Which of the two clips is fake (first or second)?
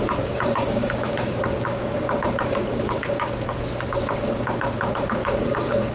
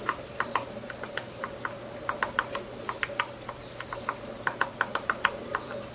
first